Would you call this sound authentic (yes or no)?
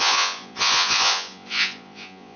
no